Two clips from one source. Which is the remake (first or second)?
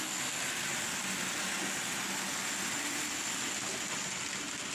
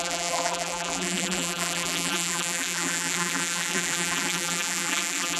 second